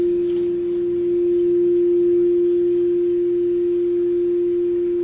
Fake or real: real